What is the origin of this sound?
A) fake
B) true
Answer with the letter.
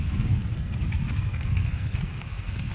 A